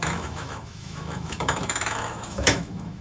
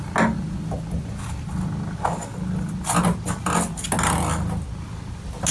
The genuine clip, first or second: second